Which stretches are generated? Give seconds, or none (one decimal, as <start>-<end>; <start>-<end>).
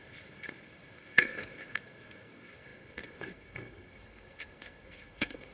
0.0-5.5